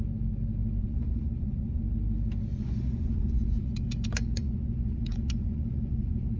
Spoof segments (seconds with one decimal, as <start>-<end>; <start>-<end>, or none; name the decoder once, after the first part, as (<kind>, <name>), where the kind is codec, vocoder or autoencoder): 0.8-1.8 (vocoder, Vocos); 2.5-6.4